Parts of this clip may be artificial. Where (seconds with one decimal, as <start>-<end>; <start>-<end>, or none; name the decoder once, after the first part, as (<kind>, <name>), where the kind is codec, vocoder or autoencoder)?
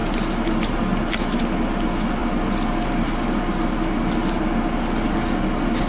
none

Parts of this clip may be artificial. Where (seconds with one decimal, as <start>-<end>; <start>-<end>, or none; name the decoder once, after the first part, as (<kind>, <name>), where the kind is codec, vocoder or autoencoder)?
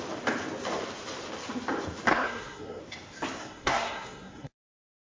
2.1-2.8 (codec, SNAC); 3.4-5.1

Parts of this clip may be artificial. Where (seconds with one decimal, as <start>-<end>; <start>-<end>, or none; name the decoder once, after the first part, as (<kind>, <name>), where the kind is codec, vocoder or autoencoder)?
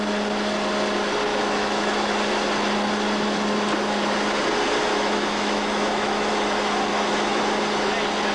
1.3-2.1 (autoencoder, DAC-VAE); 4.9-6.3; 6.9-7.4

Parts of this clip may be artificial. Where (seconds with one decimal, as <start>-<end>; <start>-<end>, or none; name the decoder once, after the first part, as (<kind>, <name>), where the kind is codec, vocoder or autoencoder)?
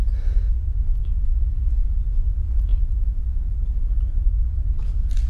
none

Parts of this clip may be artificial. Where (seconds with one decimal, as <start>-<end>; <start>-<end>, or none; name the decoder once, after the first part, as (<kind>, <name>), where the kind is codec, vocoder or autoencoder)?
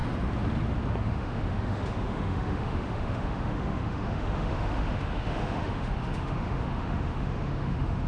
1.0-8.1 (autoencoder, DAC-VAE)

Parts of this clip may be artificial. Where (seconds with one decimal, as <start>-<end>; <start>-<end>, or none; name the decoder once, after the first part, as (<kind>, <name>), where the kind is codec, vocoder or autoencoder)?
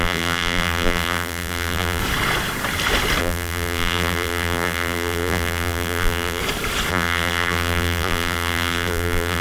0.0-2.0 (vocoder, BigVGAN v2); 3.2-6.4; 6.9-9.4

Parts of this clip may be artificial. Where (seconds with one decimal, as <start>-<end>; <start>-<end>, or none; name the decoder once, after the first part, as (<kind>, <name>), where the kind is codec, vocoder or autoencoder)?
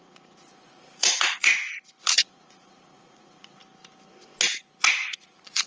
0.0-1.5 (vocoder, Vocos); 2.0-3.6; 4.8-5.7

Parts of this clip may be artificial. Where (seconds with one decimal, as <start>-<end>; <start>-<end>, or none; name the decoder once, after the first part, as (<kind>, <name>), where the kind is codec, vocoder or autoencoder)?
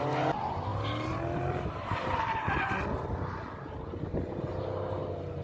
none